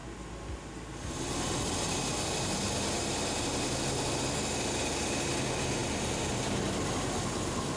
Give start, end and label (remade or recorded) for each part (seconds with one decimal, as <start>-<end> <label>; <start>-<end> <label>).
0.0-5.8 recorded; 5.8-6.6 remade; 6.6-7.8 recorded